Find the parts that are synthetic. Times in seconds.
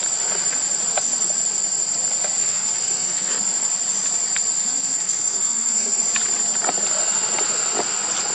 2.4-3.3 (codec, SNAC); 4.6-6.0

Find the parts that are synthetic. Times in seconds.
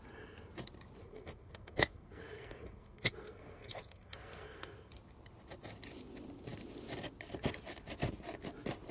1.0-4.9 (codec, SNAC)